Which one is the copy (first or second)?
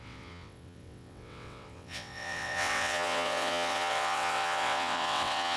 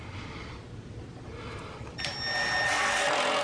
first